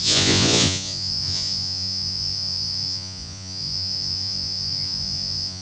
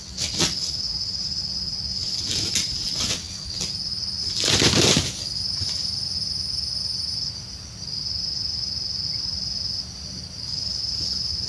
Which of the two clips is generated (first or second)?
first